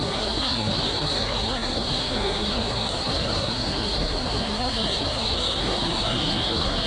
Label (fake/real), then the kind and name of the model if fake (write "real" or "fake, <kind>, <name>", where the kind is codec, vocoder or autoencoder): fake, codec, SNAC